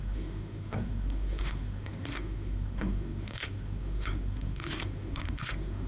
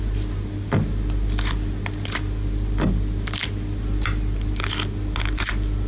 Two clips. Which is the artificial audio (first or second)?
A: first